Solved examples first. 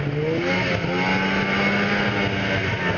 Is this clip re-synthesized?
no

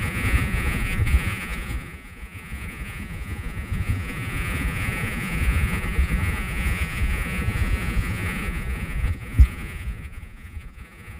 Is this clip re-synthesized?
yes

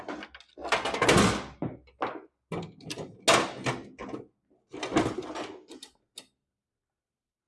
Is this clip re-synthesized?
no